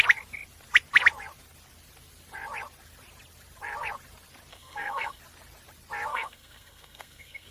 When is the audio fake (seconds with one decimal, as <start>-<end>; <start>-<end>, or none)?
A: 4.5-5.2; 6.1-7.5